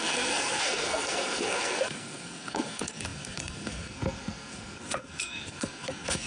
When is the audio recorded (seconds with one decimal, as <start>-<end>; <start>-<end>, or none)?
none